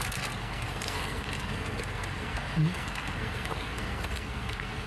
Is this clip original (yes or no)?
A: no